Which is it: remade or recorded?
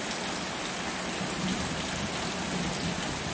recorded